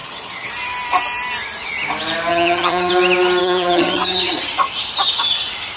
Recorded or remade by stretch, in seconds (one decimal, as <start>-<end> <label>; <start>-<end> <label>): 0.0-0.5 remade; 0.5-2.3 recorded; 2.3-2.9 remade; 2.9-3.4 recorded; 3.4-4.4 remade; 4.4-5.8 recorded